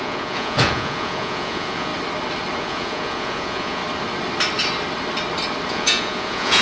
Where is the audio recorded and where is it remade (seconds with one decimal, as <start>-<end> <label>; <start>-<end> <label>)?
0.0-1.9 remade; 1.9-2.6 recorded; 2.6-3.8 remade; 3.8-5.7 recorded; 5.7-6.6 remade